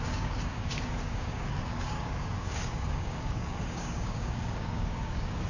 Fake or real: fake